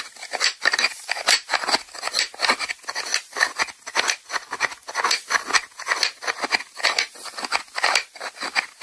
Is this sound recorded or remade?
recorded